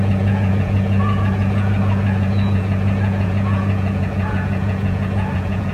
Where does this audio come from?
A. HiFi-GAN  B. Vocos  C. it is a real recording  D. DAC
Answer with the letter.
B